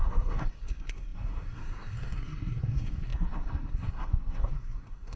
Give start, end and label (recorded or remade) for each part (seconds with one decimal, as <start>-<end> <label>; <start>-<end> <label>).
0.0-5.2 remade